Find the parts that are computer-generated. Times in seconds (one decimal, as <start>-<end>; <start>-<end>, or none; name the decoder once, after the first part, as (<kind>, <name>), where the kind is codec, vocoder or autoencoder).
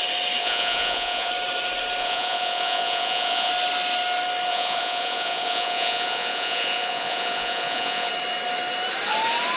0.4-1.3 (vocoder, Vocos); 2.0-3.5; 4.5-8.1